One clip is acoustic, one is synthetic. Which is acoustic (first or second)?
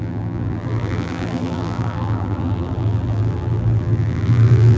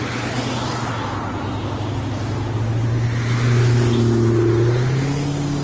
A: second